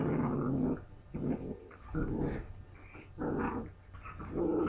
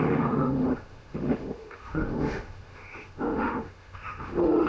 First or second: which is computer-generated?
second